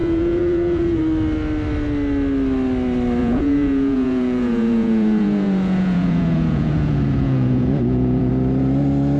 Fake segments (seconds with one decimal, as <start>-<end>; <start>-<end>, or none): 0.0-1.0; 3.2-8.3